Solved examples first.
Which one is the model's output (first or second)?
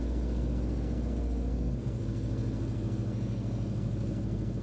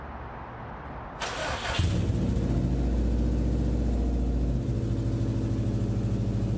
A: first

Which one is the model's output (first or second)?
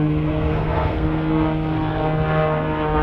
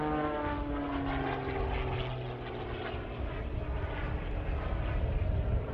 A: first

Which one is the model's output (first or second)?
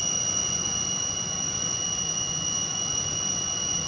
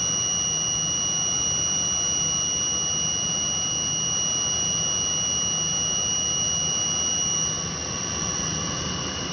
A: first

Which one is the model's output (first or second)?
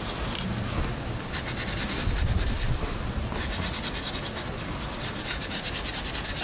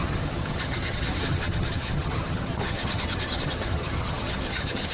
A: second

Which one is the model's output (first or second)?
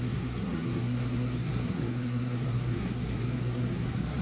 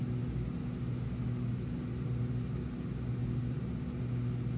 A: first